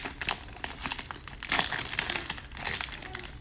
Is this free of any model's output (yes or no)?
yes